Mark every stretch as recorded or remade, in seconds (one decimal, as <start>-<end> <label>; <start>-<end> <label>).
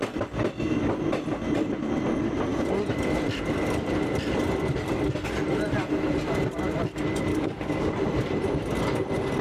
0.0-7.3 recorded; 7.3-7.9 remade; 7.9-9.4 recorded